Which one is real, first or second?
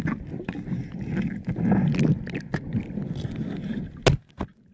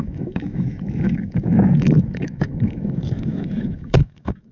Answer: first